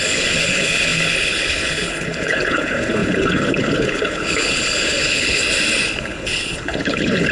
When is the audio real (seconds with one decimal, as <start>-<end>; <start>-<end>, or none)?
5.4-6.0